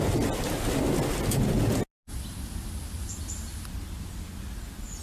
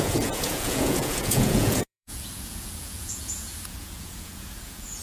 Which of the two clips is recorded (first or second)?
first